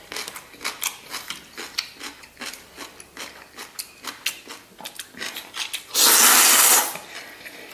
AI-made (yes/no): no